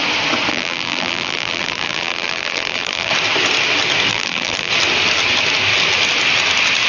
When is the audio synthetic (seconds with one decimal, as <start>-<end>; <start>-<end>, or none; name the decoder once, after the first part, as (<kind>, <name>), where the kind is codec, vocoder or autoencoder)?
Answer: 0.5-3.1 (vocoder, BigVGAN v2); 4.1-4.7